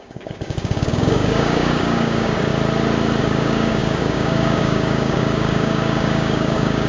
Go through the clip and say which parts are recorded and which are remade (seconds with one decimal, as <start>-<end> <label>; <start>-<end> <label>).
0.0-2.5 remade; 2.5-3.2 recorded; 3.2-6.9 remade